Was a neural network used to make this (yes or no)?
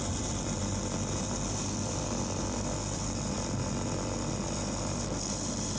yes